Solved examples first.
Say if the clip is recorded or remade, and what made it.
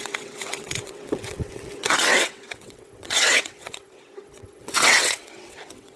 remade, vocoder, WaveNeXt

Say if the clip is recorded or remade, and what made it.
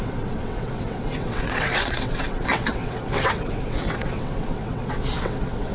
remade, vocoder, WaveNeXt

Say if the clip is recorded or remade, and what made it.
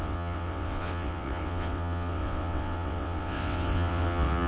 remade, vocoder, WaveNeXt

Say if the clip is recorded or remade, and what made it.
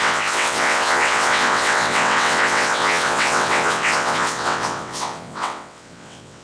remade, vocoder, WaveNeXt